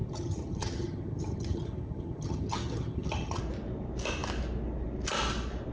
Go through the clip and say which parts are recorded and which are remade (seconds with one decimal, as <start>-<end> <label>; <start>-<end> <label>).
0.0-3.4 remade; 3.4-5.7 recorded